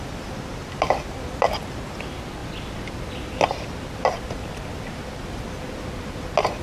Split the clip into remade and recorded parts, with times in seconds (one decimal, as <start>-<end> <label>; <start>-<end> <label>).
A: 0.0-6.6 recorded